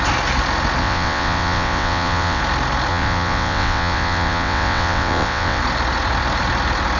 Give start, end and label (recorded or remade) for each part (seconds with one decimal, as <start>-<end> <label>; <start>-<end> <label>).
0.0-0.8 recorded; 0.8-2.4 remade; 2.4-2.9 recorded; 2.9-5.6 remade; 5.6-7.0 recorded